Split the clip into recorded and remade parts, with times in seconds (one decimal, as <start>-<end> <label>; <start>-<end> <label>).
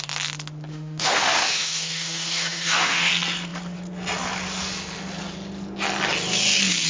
0.0-0.7 recorded; 0.7-3.1 remade; 3.1-6.9 recorded